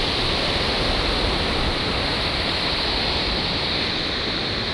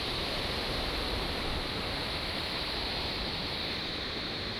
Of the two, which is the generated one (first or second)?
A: second